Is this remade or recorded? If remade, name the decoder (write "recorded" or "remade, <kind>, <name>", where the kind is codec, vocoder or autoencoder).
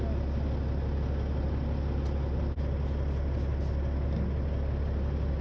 recorded